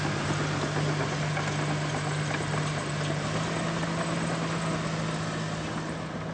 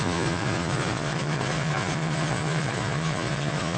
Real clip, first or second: first